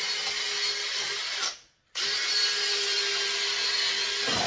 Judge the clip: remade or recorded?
recorded